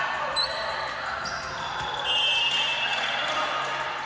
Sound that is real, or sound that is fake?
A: real